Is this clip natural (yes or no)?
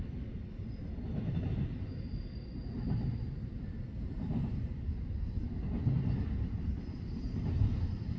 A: yes